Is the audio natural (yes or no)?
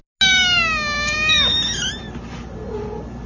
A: yes